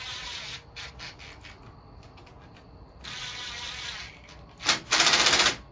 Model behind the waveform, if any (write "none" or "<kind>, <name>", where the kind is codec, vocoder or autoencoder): none